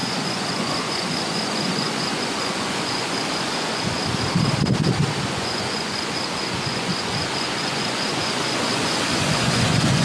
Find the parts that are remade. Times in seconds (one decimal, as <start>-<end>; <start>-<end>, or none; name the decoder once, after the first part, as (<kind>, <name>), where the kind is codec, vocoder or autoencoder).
0.0-4.0 (vocoder, Vocos); 5.3-10.0